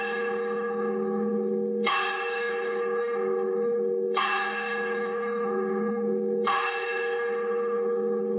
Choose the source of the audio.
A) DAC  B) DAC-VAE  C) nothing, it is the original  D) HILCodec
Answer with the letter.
D